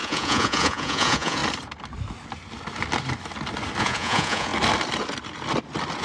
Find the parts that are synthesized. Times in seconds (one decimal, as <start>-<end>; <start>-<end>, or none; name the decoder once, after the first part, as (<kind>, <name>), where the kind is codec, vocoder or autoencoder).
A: 0.0-1.4 (vocoder, Vocos); 3.8-4.5